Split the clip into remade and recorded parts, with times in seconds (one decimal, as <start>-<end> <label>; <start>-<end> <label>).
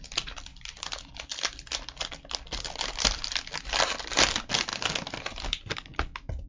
0.0-6.5 recorded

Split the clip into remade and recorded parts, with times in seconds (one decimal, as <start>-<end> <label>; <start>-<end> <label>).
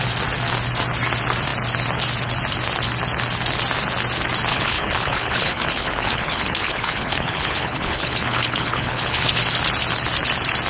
0.0-4.5 recorded; 4.5-9.3 remade; 9.3-10.7 recorded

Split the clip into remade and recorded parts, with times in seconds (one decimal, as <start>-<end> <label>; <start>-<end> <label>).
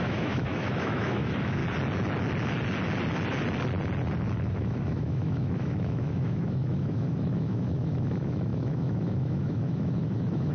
0.0-1.6 remade; 1.6-4.5 recorded; 4.5-10.5 remade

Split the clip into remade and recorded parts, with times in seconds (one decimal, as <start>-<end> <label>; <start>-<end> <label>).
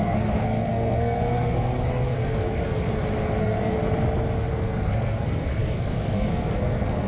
0.0-2.9 remade; 2.9-3.4 recorded; 3.4-3.8 remade; 3.8-4.5 recorded; 4.5-7.1 remade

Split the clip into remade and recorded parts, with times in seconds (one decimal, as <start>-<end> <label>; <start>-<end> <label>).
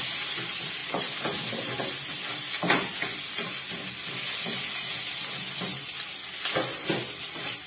0.0-7.7 recorded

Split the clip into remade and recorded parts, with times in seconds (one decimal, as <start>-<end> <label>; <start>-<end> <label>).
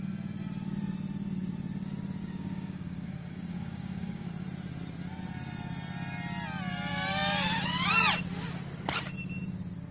0.0-2.2 recorded; 2.2-4.3 remade; 4.3-9.9 recorded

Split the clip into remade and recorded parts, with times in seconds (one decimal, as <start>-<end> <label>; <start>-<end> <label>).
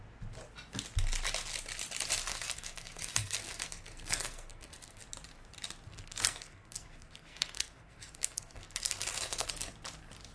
0.0-2.3 recorded; 2.3-5.0 remade; 5.0-5.9 recorded; 5.9-9.7 remade; 9.7-10.3 recorded